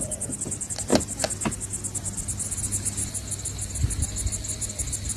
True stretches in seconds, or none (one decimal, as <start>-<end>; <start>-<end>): 0.0-5.2